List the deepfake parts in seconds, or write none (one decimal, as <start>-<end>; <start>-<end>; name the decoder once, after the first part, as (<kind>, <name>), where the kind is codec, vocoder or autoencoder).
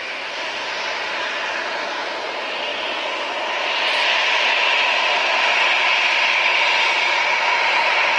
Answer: 0.0-2.7 (vocoder, BigVGAN v2); 3.2-8.2